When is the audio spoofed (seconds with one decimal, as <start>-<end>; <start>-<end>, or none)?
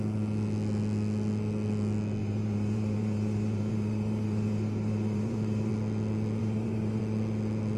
2.2-5.7; 6.4-7.0